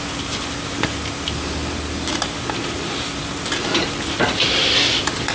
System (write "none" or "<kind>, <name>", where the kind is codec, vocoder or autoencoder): none